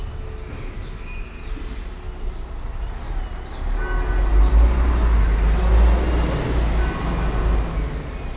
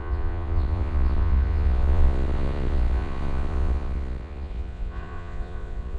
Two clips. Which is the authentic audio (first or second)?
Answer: first